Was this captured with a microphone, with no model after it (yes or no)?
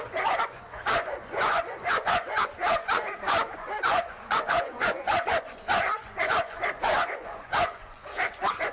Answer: no